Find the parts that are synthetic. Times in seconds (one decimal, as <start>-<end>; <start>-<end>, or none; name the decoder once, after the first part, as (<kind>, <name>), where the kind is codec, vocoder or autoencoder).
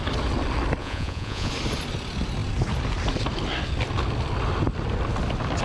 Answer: 0.8-1.5 (vocoder, Vocos)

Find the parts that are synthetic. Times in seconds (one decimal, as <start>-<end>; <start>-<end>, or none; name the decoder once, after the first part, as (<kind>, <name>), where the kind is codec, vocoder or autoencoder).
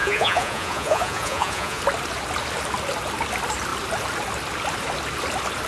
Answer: 0.0-1.8 (vocoder, Vocos)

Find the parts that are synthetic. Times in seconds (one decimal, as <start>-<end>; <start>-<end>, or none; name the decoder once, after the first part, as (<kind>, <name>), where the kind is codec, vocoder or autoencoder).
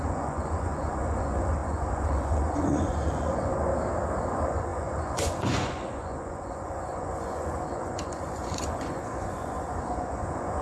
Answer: 0.0-3.7 (vocoder, Vocos); 4.2-10.6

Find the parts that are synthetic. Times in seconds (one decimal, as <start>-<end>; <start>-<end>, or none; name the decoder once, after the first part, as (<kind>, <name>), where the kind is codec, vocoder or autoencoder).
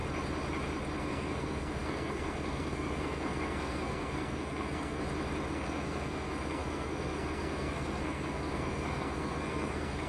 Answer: 1.0-5.0 (codec, SNAC); 5.5-10.1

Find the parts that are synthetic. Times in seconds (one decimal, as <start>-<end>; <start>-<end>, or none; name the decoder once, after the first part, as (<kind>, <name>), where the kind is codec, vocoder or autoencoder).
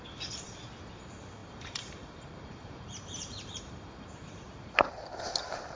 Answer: 1.4-4.9 (vocoder, BigVGAN v2)